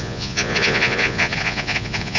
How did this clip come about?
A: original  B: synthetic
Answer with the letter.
B